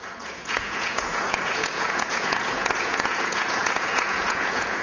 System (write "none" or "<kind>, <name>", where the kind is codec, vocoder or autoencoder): vocoder, Vocos